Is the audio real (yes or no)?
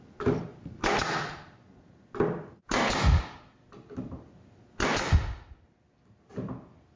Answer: yes